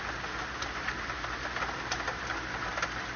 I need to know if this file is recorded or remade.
recorded